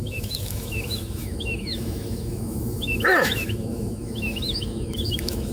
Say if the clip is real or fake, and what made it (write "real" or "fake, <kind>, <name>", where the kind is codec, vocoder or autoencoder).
fake, autoencoder, DAC-VAE